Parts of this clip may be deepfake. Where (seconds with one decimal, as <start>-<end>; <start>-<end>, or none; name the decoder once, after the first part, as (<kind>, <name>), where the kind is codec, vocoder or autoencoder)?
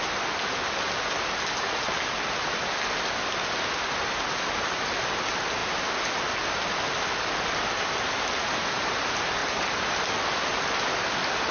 none